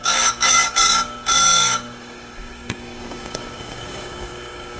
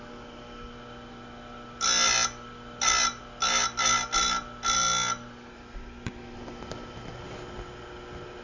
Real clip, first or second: second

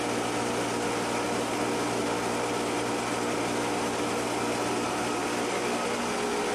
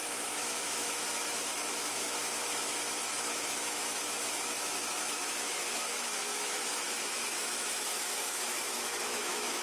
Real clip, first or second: first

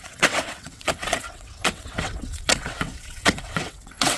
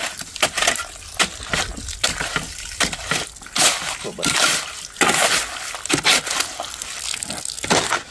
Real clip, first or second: second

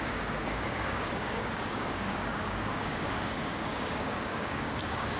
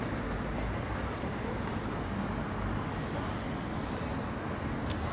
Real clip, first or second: second